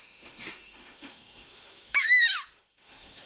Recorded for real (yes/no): no